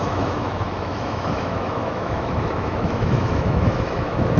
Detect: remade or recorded remade